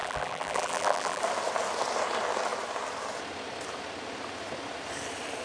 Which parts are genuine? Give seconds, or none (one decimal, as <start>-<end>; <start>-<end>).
1.2-5.4